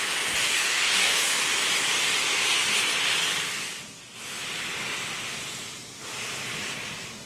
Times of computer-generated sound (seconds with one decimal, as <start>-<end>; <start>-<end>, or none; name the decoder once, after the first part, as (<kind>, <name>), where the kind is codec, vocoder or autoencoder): 0.4-1.2 (codec, DAC)